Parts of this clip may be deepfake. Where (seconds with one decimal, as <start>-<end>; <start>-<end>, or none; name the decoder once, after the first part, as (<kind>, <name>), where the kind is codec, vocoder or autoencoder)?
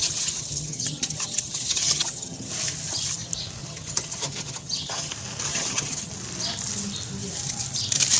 0.0-2.5 (vocoder, HiFi-GAN); 3.6-5.1; 5.5-6.1